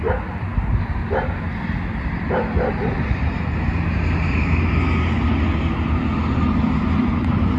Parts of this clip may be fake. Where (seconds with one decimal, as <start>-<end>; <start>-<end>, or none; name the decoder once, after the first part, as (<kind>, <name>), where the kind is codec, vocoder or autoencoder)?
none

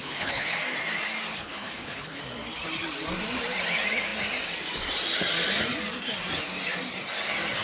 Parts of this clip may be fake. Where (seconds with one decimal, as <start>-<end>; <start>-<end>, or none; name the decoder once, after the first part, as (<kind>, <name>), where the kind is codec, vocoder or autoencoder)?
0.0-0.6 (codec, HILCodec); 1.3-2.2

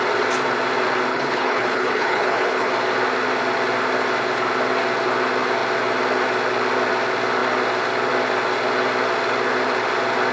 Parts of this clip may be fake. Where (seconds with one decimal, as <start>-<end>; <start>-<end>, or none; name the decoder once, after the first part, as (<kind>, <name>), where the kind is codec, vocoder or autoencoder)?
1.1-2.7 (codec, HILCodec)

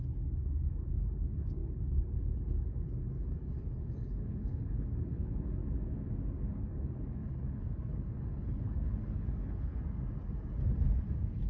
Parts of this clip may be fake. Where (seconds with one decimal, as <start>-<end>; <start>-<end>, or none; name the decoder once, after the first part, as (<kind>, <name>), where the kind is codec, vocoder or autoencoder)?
0.0-5.6 (codec, HILCodec); 6.5-9.8

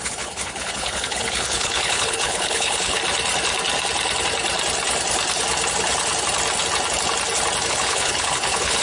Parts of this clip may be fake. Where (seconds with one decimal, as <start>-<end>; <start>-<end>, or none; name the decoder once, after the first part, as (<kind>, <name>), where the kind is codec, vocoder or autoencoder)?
0.0-3.0 (codec, HILCodec); 7.7-8.8

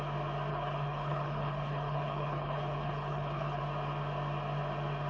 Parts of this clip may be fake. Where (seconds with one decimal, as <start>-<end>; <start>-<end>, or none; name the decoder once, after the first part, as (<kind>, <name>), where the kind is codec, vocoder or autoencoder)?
0.5-3.6 (codec, HILCodec)